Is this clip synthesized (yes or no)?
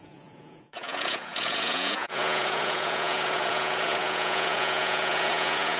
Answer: yes